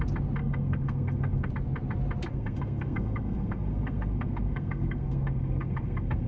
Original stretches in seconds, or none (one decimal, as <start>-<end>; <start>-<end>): 0.0-0.4; 1.5-2.3